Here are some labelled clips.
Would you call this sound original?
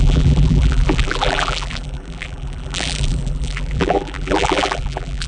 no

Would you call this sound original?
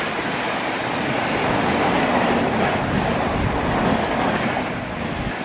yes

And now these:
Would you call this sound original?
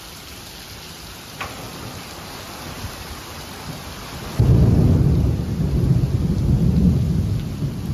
yes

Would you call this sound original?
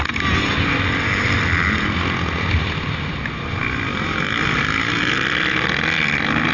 yes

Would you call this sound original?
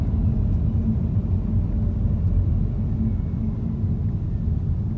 yes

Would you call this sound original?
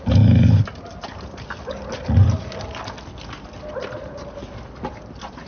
yes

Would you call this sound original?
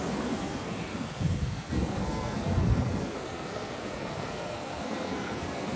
no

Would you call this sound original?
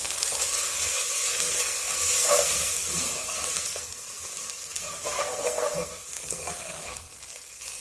no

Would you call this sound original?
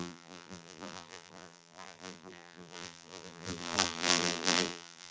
no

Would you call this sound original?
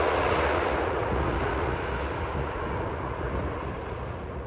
no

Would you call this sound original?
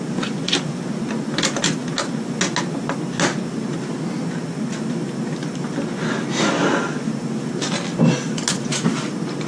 yes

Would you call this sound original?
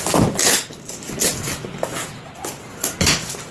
yes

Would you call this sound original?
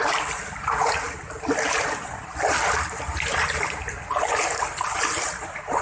yes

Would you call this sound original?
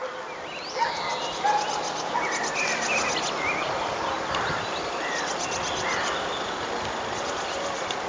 yes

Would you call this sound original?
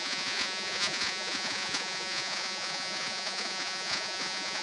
no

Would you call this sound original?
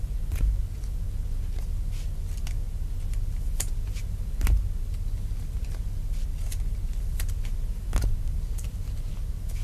yes